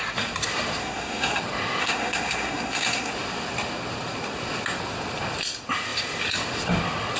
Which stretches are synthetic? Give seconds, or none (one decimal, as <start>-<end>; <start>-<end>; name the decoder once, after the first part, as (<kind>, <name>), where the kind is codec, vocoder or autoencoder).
0.8-1.4 (codec, SNAC); 1.8-3.1